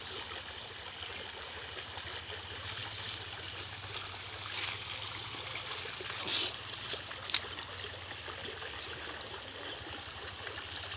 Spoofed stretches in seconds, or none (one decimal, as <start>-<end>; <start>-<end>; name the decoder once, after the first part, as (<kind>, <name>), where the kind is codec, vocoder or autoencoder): none